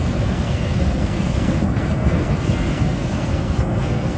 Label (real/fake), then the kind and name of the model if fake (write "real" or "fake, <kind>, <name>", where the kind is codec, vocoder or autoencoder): fake, codec, SNAC